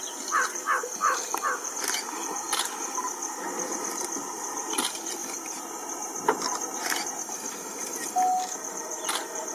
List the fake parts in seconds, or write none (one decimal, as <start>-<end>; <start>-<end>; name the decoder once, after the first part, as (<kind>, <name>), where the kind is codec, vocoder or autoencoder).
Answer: 5.2-8.1 (vocoder, BigVGAN v2)